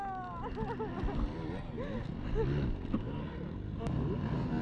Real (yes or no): yes